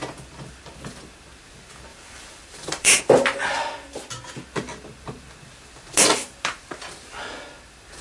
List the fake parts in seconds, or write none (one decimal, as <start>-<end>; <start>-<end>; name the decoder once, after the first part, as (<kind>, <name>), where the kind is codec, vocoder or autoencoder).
1.9-3.0 (vocoder, BigVGAN v2)